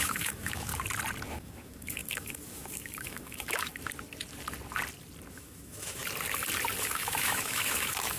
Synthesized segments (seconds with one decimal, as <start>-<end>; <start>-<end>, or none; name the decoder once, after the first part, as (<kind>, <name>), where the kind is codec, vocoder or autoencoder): 0.0-0.7 (autoencoder, DAC-VAE); 1.3-3.7; 5.3-6.0; 6.8-8.2